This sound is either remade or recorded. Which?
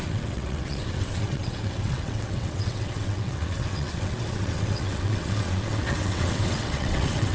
remade